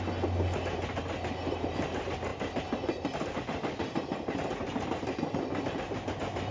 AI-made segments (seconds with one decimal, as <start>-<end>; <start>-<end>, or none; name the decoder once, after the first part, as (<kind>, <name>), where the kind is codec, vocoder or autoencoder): none